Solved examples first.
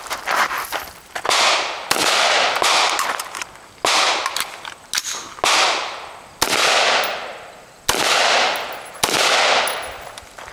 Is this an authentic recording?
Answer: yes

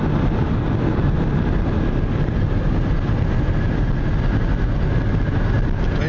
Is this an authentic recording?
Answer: yes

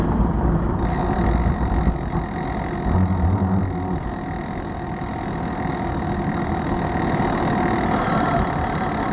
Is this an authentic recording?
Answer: yes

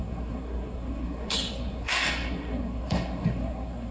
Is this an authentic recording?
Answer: no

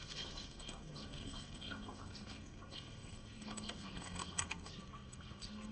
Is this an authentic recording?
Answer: no